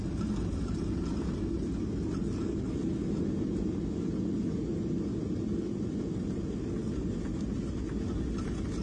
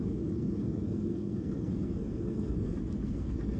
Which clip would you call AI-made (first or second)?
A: second